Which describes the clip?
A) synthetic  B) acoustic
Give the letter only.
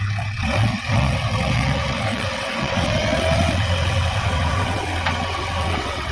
A